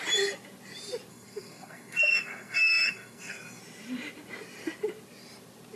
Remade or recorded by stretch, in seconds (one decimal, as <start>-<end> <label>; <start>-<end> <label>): 0.0-1.1 recorded; 1.1-3.6 remade; 3.6-5.8 recorded